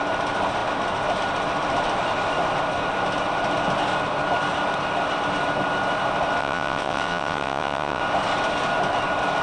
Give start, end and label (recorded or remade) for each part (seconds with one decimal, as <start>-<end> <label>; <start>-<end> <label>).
0.0-6.4 recorded; 6.4-8.0 remade; 8.0-9.4 recorded